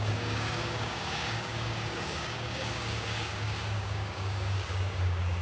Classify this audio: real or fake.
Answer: fake